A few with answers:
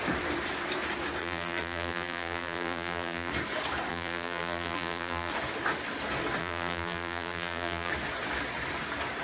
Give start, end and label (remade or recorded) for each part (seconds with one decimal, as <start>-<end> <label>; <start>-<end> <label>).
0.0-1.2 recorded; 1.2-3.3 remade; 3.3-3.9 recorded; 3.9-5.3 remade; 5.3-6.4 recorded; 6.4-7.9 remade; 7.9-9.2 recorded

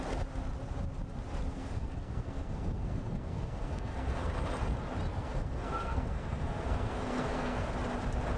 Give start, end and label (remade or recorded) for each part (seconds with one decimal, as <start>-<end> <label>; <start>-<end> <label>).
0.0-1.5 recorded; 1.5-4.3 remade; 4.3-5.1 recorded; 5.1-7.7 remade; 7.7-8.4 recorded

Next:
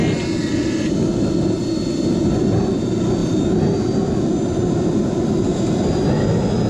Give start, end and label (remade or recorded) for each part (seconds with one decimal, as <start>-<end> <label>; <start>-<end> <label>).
0.0-6.7 recorded

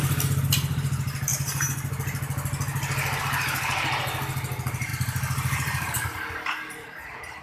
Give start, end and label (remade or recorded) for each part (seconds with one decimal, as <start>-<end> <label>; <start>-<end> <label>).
0.0-7.4 recorded